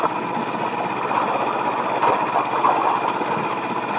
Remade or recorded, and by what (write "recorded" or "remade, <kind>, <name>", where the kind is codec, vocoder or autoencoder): recorded